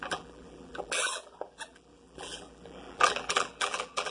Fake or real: fake